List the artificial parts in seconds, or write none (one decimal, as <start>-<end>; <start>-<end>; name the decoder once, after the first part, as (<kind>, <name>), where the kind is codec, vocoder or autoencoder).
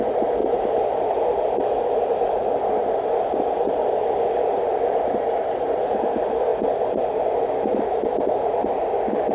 none